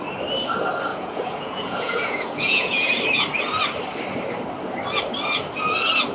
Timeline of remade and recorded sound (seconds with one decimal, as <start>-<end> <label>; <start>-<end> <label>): 0.0-0.9 recorded; 0.9-3.0 remade; 3.0-6.1 recorded